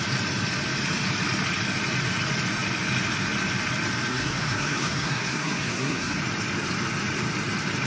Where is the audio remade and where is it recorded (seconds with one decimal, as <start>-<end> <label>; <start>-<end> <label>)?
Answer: 0.0-4.1 recorded; 4.1-6.2 remade; 6.2-7.9 recorded